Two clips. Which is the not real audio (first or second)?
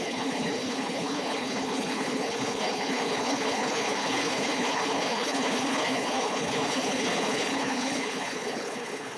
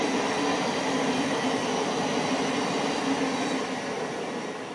first